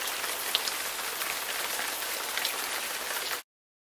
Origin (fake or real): real